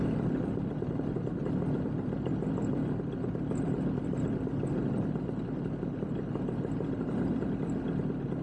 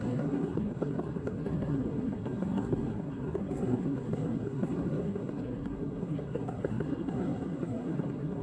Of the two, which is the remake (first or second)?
second